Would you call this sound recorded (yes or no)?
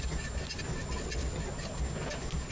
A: yes